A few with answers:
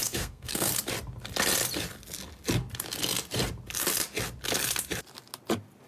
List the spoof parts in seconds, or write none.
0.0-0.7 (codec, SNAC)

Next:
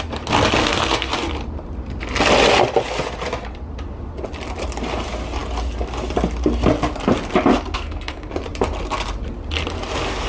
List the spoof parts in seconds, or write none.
0.6-1.1 (codec, SNAC); 7.5-8.3

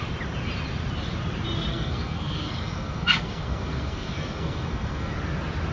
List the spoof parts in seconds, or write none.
1.7-5.1 (codec, SNAC)